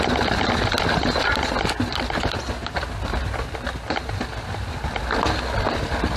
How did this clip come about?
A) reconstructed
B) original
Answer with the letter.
B